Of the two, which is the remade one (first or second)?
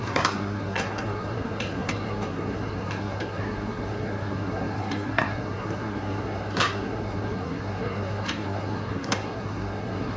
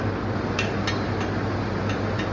first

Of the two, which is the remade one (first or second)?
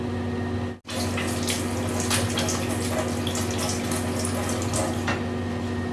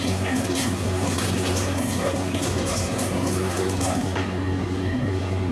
second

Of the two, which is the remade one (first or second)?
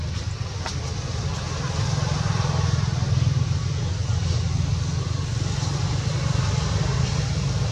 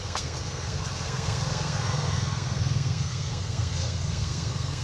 second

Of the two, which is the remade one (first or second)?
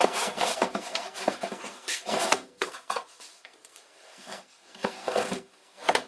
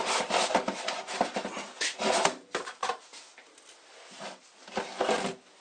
first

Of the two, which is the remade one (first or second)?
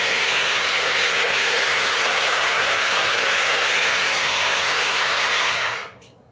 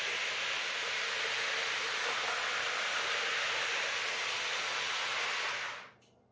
first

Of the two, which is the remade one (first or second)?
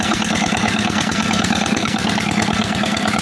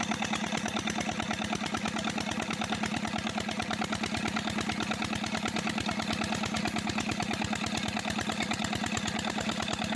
first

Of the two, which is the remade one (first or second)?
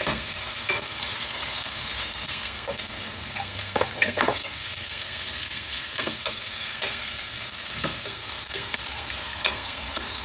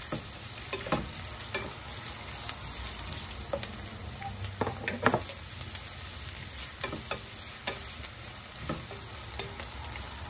first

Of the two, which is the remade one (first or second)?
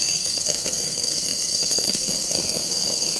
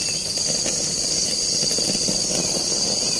first